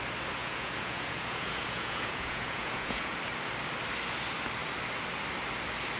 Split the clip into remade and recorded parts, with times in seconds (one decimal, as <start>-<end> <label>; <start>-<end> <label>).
0.0-0.4 recorded; 0.4-3.2 remade; 3.2-6.0 recorded